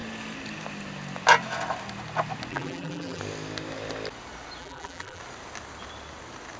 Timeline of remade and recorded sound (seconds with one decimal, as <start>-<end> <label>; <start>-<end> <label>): 0.0-2.5 recorded; 2.5-3.2 remade; 3.2-4.6 recorded; 4.6-5.2 remade; 5.2-6.6 recorded